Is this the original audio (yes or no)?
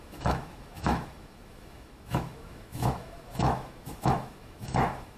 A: no